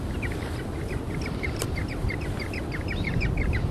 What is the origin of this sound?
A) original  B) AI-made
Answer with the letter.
B